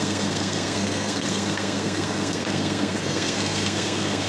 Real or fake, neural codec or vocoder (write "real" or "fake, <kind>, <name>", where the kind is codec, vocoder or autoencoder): fake, codec, SNAC